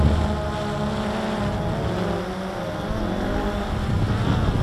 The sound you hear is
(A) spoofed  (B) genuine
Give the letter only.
B